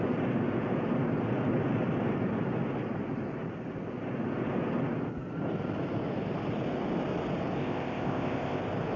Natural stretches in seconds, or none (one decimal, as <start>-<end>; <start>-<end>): 0.0-7.6; 8.6-9.0